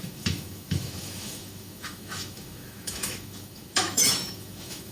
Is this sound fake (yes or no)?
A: yes